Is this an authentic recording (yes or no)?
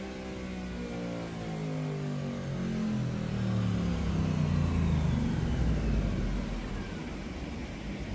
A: yes